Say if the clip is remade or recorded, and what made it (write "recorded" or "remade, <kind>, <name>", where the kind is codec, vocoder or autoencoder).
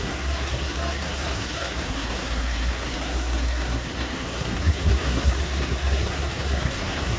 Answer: remade, codec, SNAC